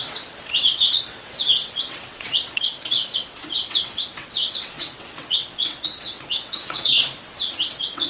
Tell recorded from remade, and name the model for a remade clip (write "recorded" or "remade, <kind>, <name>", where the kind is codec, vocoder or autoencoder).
remade, vocoder, WaveNeXt